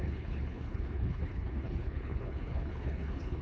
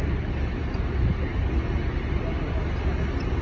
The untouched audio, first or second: second